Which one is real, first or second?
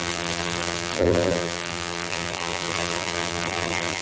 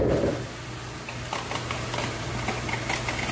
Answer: second